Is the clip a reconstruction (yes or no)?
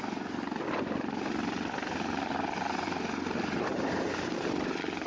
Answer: no